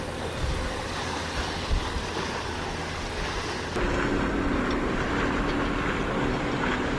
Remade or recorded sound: recorded